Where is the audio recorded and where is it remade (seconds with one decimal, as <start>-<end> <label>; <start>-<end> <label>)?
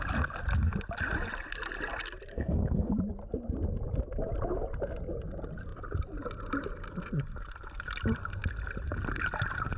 0.0-2.3 recorded; 2.3-2.9 remade; 2.9-9.8 recorded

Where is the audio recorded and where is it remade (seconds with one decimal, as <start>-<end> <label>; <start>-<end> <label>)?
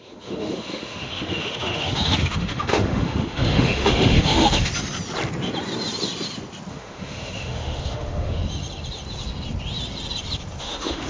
0.0-4.7 remade; 4.7-6.7 recorded; 6.7-8.4 remade; 8.4-10.6 recorded; 10.6-11.1 remade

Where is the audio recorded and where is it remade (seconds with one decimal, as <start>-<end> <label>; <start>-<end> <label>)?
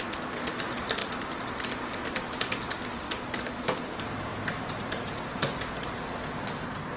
0.0-7.0 recorded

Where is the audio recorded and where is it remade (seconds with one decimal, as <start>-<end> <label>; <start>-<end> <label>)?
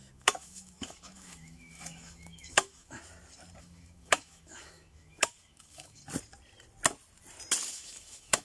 0.0-3.0 remade; 3.0-3.6 recorded; 3.6-6.0 remade; 6.0-7.7 recorded; 7.7-8.4 remade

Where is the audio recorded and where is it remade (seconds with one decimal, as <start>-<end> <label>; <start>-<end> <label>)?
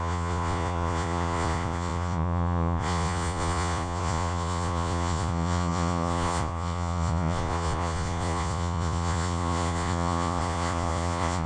0.0-11.5 remade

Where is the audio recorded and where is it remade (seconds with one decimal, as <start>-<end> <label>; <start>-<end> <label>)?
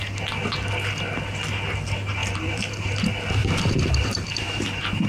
0.0-2.2 recorded; 2.2-3.0 remade; 3.0-3.4 recorded; 3.4-5.1 remade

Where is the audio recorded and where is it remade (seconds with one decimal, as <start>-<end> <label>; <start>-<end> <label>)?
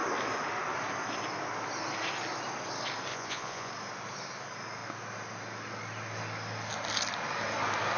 0.0-3.1 recorded; 3.1-3.7 remade; 3.7-8.0 recorded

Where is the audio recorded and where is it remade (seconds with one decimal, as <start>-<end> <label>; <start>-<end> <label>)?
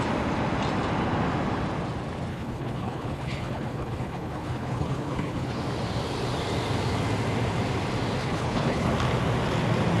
0.0-2.3 recorded; 2.3-5.6 remade; 5.6-8.2 recorded; 8.2-8.9 remade; 8.9-10.0 recorded